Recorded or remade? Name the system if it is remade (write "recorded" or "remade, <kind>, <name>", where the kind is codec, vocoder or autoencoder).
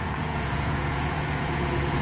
remade, vocoder, Vocos